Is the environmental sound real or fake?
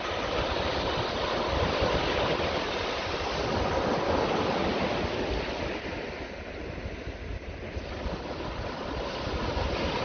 real